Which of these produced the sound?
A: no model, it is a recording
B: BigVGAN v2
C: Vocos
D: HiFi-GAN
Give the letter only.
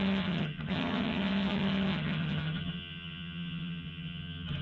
D